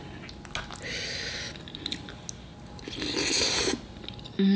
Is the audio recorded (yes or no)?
yes